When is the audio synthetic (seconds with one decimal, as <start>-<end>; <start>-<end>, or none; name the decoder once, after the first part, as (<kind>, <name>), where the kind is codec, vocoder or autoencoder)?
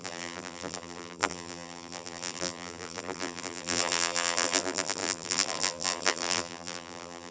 0.0-7.3 (vocoder, BigVGAN v2)